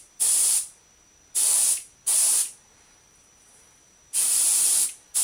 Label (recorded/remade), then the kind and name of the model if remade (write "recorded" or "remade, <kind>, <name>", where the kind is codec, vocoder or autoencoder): remade, vocoder, BigVGAN v2